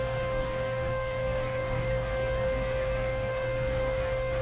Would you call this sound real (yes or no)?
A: no